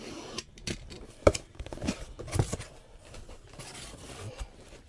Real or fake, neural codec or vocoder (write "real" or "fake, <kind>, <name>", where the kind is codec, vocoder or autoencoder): real